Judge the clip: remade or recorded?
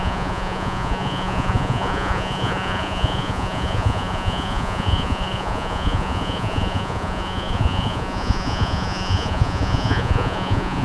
remade